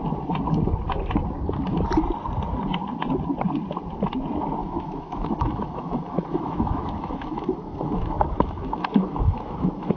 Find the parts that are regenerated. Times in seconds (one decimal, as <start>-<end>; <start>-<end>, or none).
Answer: 4.6-10.0